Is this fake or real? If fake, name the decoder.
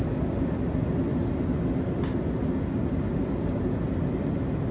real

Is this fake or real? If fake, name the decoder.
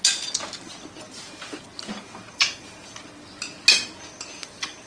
real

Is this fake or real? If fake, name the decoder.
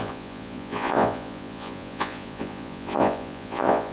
fake, vocoder, Vocos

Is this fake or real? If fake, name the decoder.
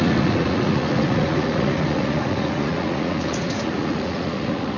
fake, vocoder, Vocos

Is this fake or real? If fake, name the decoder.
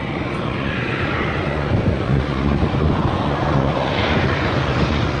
fake, vocoder, Vocos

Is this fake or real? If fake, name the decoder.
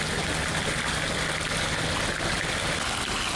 real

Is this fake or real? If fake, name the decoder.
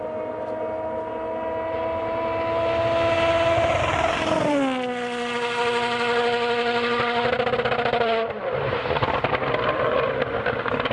real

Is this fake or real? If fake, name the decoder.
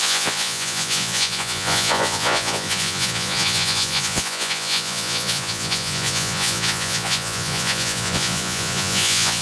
fake, vocoder, Vocos